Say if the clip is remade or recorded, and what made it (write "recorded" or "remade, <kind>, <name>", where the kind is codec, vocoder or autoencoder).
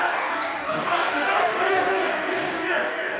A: remade, codec, DAC